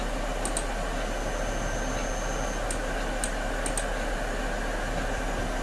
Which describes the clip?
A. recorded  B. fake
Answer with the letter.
A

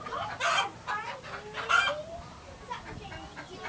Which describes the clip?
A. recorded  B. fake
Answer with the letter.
A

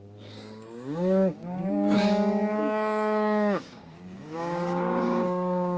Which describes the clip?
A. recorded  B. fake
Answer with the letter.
B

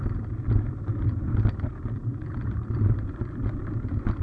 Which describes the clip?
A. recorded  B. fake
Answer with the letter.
A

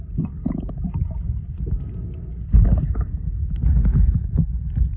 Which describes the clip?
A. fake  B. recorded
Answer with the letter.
B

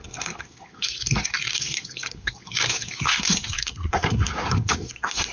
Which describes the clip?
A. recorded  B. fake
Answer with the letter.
B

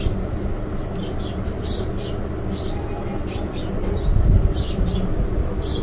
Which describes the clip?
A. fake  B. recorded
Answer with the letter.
B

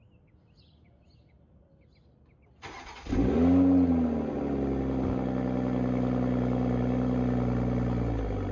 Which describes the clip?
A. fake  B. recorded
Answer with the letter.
B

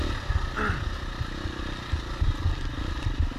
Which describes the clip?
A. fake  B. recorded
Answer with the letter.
B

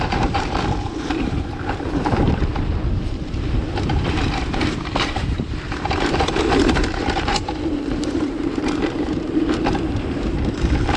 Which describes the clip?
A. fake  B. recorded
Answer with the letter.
A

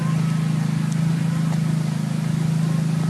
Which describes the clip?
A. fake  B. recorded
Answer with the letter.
B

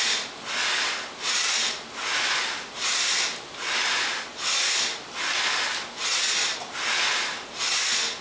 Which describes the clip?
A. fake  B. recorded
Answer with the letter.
B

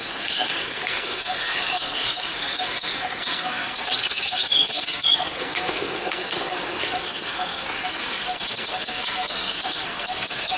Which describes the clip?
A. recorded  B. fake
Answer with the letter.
B